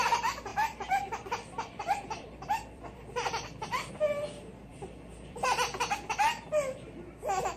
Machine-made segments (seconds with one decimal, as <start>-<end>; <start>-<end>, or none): 0.5-3.9; 4.7-5.8